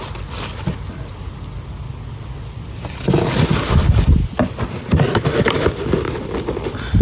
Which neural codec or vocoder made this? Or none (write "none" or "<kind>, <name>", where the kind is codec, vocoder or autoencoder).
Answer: none